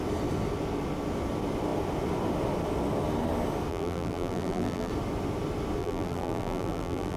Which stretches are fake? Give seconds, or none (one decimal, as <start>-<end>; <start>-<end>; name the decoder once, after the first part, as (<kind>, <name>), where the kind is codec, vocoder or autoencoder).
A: 3.7-4.9 (vocoder, BigVGAN v2); 5.8-7.2